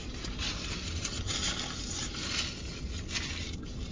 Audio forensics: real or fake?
real